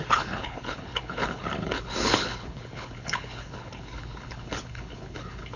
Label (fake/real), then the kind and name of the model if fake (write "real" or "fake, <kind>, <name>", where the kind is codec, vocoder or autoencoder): fake, codec, HILCodec